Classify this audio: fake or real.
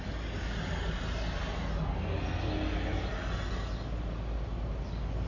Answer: real